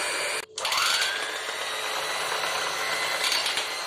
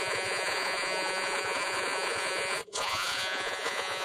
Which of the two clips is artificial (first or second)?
second